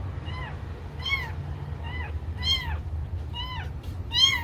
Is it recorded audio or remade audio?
recorded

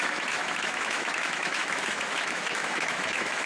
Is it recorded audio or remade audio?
remade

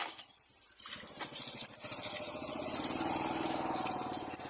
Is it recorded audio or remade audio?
recorded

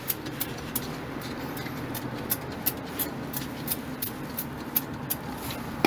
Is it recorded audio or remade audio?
recorded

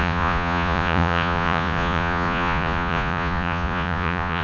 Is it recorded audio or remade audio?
remade